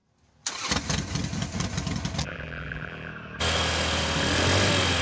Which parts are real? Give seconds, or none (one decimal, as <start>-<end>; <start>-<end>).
0.0-2.2; 3.1-5.0